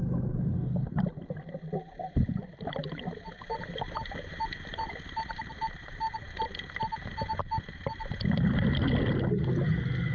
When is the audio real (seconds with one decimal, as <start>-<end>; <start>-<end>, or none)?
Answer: 0.0-5.8; 7.4-10.1